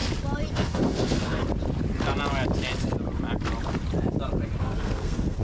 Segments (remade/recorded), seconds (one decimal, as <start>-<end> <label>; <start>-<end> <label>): 0.0-0.5 recorded; 0.5-1.4 remade; 1.4-4.6 recorded; 4.6-5.4 remade